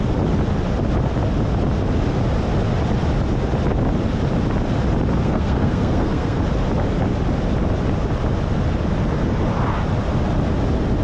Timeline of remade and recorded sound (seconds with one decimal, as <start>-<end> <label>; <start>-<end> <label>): 0.0-5.2 recorded; 5.2-6.4 remade; 6.4-11.0 recorded